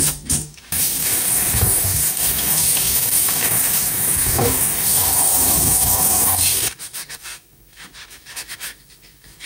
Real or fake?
fake